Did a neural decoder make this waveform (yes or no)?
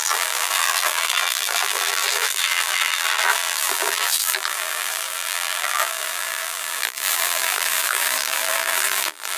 yes